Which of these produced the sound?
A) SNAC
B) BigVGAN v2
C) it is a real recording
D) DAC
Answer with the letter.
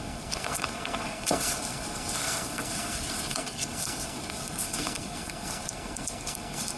A